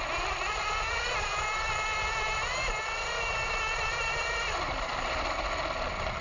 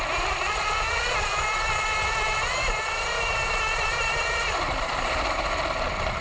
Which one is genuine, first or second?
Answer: first